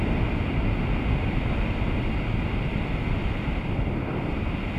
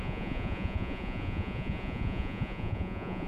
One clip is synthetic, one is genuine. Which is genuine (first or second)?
first